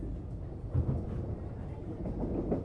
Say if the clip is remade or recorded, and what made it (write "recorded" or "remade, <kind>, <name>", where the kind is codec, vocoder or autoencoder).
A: recorded